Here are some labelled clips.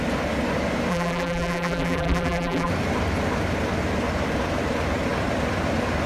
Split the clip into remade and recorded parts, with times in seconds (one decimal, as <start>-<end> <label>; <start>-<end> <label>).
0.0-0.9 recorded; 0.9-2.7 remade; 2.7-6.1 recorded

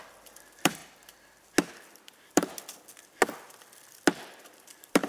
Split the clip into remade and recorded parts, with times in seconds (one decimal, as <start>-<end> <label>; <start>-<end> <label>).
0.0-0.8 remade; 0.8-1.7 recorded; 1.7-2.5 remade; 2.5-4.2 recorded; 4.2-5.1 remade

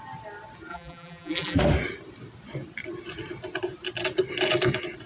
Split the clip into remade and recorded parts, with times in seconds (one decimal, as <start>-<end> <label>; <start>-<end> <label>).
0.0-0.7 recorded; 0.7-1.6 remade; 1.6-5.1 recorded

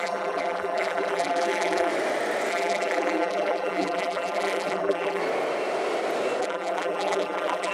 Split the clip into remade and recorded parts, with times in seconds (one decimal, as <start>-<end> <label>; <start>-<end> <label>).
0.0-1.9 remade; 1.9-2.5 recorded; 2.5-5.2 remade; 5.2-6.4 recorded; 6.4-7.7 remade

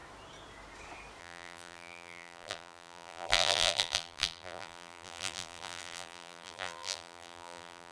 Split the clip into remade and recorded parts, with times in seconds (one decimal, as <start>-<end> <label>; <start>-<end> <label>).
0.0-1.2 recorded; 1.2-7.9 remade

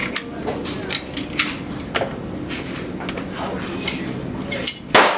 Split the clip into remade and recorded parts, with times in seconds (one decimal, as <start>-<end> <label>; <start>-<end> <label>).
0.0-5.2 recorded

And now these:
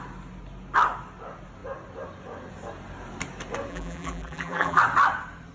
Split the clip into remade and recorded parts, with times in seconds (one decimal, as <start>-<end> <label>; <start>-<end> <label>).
0.0-3.7 recorded; 3.7-4.8 remade; 4.8-5.5 recorded

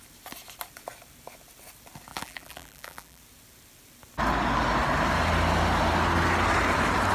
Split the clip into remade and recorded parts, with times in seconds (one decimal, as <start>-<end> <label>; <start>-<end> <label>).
0.0-2.1 recorded; 2.1-3.2 remade; 3.2-7.1 recorded